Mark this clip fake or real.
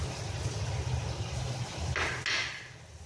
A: real